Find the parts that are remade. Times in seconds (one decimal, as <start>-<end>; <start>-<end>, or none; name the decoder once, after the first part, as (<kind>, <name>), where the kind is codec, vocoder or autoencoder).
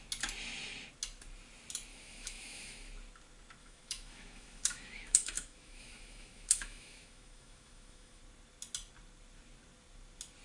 1.9-2.9 (autoencoder, DAC-VAE); 3.6-8.2